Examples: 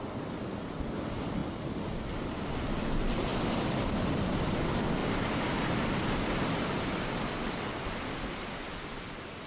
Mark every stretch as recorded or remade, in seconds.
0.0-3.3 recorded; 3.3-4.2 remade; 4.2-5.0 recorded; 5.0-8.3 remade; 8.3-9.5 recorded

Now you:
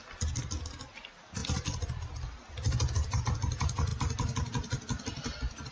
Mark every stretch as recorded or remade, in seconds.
0.0-5.7 recorded

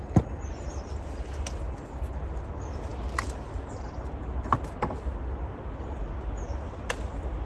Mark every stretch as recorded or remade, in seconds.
0.0-7.5 recorded

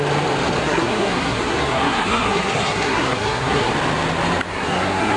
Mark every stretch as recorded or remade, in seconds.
0.0-0.6 recorded; 0.6-3.7 remade; 3.7-4.5 recorded; 4.5-5.2 remade

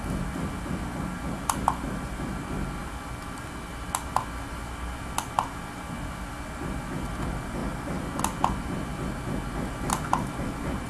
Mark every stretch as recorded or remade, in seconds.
0.0-10.9 recorded

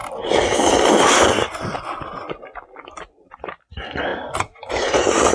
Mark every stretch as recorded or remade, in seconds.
0.0-3.2 recorded; 3.2-5.3 remade

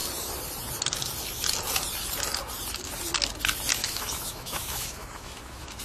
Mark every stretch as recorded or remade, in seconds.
0.0-3.8 recorded; 3.8-5.8 remade

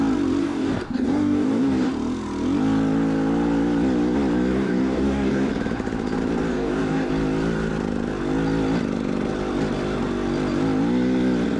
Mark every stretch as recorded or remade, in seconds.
0.0-0.4 recorded; 0.4-1.9 remade; 1.9-4.5 recorded; 4.5-5.5 remade; 5.5-6.5 recorded; 6.5-7.1 remade; 7.1-11.6 recorded